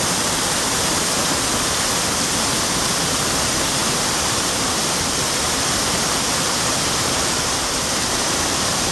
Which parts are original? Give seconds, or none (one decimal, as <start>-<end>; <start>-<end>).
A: 1.2-3.0; 3.8-4.3